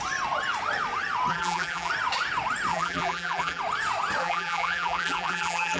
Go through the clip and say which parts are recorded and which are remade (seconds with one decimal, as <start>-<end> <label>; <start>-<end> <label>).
0.0-1.3 recorded; 1.3-1.9 remade; 1.9-2.7 recorded; 2.7-3.6 remade; 3.6-4.2 recorded; 4.2-5.8 remade

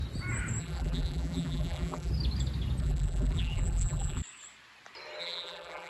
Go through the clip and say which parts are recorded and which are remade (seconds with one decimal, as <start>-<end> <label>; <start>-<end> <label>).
0.0-0.6 recorded; 0.6-2.1 remade; 2.1-2.8 recorded; 2.8-4.2 remade; 4.2-5.2 recorded; 5.2-5.9 remade

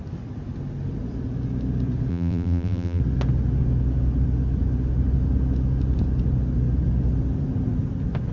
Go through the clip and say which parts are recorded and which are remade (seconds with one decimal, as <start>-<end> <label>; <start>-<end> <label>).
0.0-2.1 recorded; 2.1-3.0 remade; 3.0-8.3 recorded